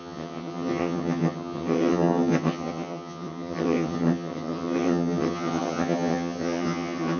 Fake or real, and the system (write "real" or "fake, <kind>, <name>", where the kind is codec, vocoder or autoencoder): fake, vocoder, HiFi-GAN